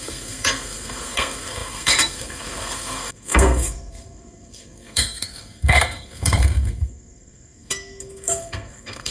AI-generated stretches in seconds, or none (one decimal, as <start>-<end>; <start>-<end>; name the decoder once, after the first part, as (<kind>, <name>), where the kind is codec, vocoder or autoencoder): 0.0-9.1 (codec, SNAC)